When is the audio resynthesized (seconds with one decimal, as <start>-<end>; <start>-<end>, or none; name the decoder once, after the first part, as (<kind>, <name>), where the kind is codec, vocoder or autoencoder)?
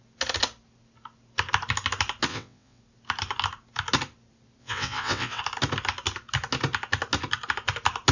2.3-2.8 (vocoder, WaveNeXt); 4.6-5.4